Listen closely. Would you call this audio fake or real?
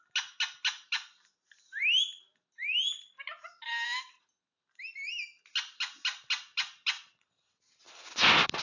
real